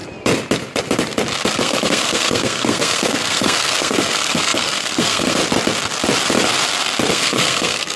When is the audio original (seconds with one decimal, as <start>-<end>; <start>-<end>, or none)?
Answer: 0.0-1.5; 5.4-7.1